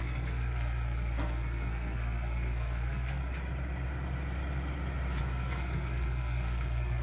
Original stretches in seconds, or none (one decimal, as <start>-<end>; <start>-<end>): 3.2-5.2